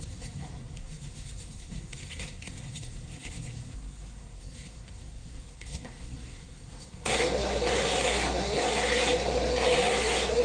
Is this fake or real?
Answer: fake